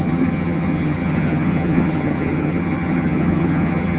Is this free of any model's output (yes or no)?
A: no